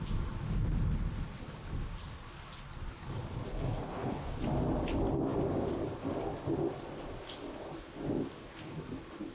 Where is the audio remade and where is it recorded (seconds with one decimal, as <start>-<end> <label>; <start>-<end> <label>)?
0.0-3.5 recorded; 3.5-4.4 remade; 4.4-9.3 recorded